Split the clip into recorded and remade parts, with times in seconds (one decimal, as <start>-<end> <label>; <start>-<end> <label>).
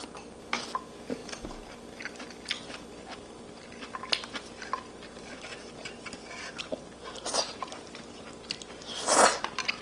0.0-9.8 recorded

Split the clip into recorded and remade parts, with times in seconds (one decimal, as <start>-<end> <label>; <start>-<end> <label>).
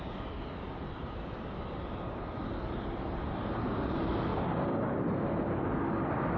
0.0-6.4 recorded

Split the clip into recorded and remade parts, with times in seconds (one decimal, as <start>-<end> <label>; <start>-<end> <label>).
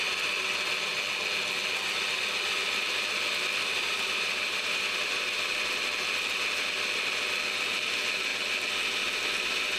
0.0-3.6 recorded; 3.6-4.8 remade; 4.8-9.8 recorded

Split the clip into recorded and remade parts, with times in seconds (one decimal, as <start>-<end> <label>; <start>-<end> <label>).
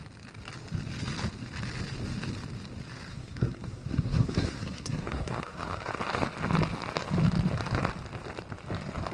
0.0-3.1 recorded; 3.1-5.9 remade; 5.9-9.1 recorded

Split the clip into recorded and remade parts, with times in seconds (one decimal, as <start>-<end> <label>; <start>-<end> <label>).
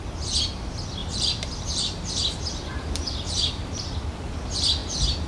0.0-1.0 recorded; 1.0-3.8 remade; 3.8-5.3 recorded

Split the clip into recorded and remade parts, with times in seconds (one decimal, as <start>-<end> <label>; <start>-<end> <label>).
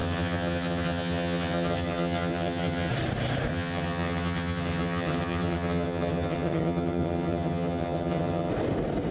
0.0-2.9 remade; 2.9-3.5 recorded; 3.5-8.5 remade; 8.5-9.1 recorded